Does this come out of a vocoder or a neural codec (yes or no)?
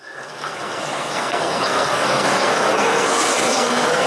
yes